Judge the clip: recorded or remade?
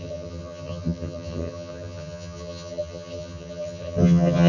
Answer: remade